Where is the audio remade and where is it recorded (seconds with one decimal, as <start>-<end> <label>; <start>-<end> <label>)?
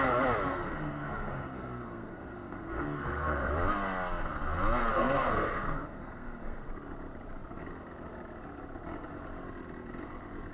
0.0-0.5 recorded; 0.5-3.5 remade; 3.5-4.9 recorded; 4.9-6.7 remade; 6.7-10.5 recorded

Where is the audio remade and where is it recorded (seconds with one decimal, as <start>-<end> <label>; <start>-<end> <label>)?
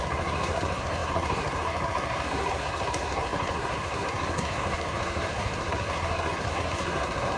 0.0-7.4 remade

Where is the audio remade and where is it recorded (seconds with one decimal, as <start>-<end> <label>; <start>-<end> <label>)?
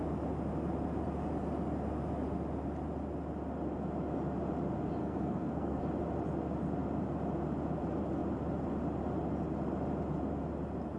0.0-5.0 recorded; 5.0-5.8 remade; 5.8-11.0 recorded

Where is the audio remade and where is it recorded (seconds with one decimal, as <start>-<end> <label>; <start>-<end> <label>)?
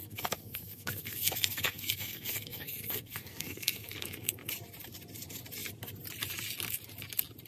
0.0-4.5 remade; 4.5-7.5 recorded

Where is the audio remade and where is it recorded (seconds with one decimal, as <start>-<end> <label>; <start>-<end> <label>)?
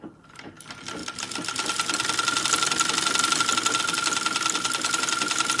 0.0-5.6 recorded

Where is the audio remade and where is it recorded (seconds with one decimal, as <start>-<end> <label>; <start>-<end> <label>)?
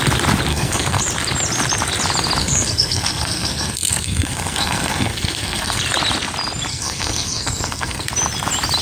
0.0-0.5 recorded; 0.5-1.0 remade; 1.0-2.4 recorded; 2.4-5.8 remade; 5.8-6.7 recorded; 6.7-8.1 remade; 8.1-8.8 recorded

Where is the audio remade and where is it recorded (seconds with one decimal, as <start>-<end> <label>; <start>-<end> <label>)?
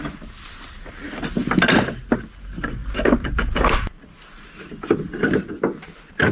0.0-6.3 recorded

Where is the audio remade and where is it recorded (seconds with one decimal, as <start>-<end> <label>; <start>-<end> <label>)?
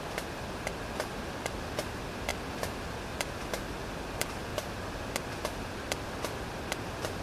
0.0-7.2 recorded